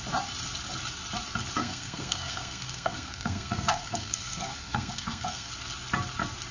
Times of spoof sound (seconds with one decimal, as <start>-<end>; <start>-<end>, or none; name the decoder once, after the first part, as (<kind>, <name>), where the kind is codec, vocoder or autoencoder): 1.6-5.5 (codec, SNAC)